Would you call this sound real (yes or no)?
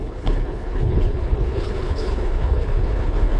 no